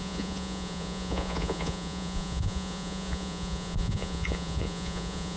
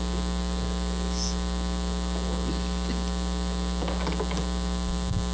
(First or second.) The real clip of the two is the second